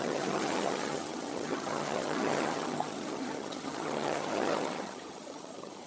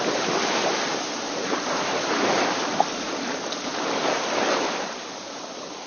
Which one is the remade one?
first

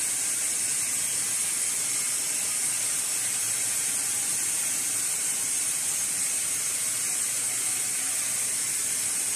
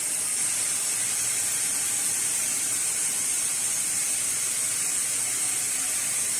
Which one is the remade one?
second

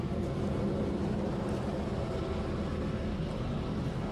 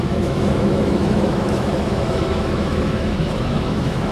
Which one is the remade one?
second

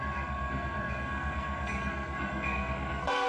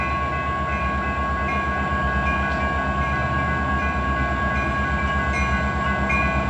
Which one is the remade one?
first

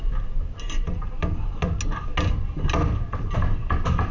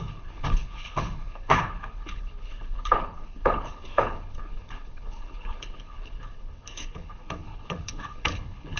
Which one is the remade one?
second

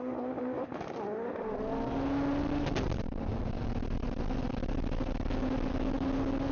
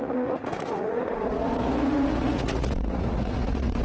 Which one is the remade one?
second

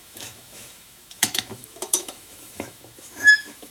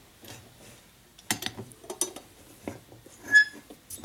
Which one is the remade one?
first